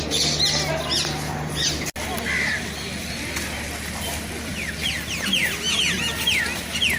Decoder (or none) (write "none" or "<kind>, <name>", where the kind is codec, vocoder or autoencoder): none